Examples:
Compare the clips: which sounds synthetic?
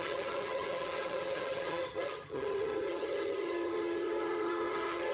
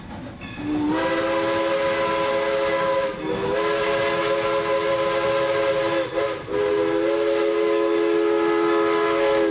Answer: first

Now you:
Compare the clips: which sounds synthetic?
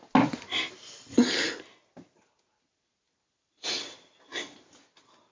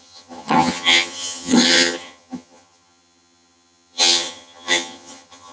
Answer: second